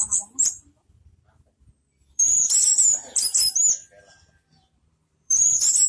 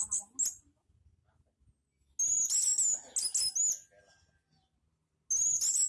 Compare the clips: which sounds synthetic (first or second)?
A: first